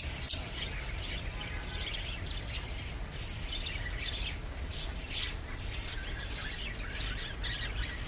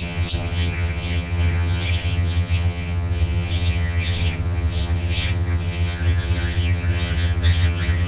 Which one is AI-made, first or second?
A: second